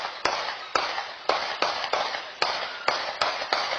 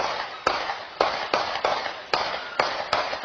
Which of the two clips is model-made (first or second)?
first